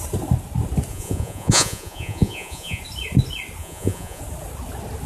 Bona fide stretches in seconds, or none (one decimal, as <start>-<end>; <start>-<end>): 0.0-0.9; 2.8-3.6; 4.2-5.1